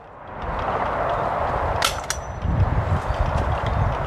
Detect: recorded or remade recorded